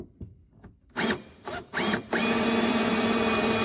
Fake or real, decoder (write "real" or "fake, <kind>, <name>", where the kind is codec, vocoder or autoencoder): fake, vocoder, BigVGAN v2